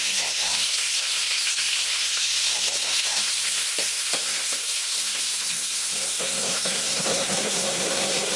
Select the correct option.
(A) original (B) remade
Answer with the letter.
B